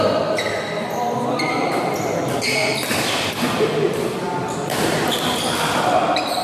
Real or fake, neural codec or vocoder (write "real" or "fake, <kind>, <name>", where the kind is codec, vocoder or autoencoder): fake, vocoder, BigVGAN v2